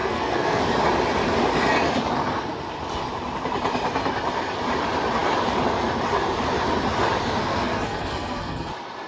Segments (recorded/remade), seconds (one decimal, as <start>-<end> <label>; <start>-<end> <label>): 0.0-0.6 remade; 0.6-7.4 recorded; 7.4-8.7 remade; 8.7-9.1 recorded